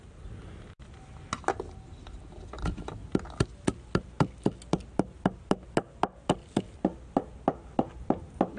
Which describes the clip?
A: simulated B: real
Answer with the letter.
B